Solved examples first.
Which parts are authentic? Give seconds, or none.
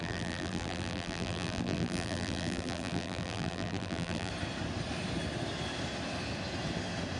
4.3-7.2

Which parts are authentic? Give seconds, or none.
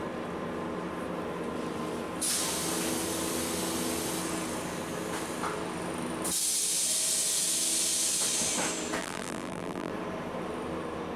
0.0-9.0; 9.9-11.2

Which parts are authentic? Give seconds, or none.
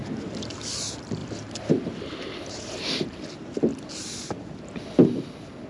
0.5-1.2; 4.6-5.7